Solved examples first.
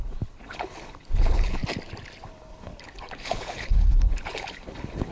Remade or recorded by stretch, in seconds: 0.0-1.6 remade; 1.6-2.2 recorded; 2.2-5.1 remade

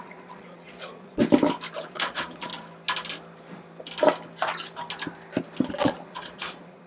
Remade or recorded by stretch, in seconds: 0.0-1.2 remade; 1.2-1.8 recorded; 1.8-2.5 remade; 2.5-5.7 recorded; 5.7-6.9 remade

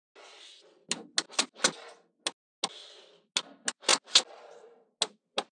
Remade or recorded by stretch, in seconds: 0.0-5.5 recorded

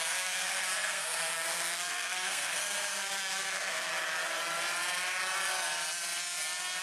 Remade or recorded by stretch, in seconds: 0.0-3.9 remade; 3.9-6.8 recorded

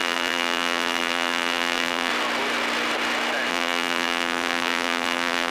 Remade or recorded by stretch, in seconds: 0.0-2.1 remade; 2.1-3.5 recorded; 3.5-5.5 remade

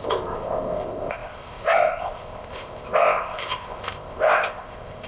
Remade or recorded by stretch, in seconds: 0.0-5.1 remade

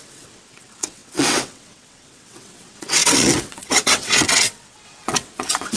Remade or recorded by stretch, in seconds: 0.0-5.8 remade

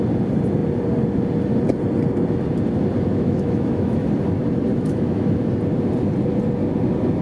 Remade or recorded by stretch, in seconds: 0.0-3.1 recorded; 3.1-4.1 remade; 4.1-4.7 recorded; 4.7-5.5 remade; 5.5-7.2 recorded